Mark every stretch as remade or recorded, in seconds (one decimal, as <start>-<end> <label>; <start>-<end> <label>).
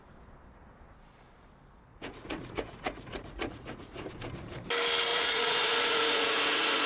0.0-1.9 recorded; 1.9-4.1 remade; 4.1-5.1 recorded; 5.1-6.9 remade